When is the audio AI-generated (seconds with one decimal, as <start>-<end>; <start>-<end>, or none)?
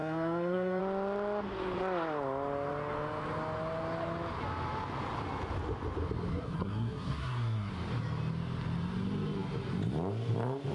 0.0-0.8; 6.3-7.7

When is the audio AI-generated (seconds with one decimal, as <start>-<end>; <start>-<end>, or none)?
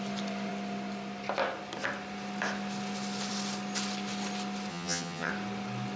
4.7-5.3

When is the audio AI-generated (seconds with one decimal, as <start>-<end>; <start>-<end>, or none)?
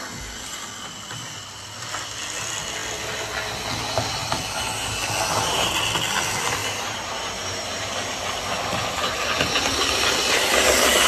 6.6-7.9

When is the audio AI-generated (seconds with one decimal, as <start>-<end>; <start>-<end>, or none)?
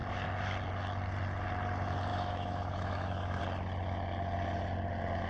2.1-3.4